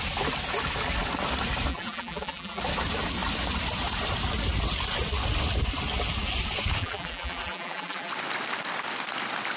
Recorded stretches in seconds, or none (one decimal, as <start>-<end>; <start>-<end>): 0.0-1.7; 2.6-6.8; 8.1-9.6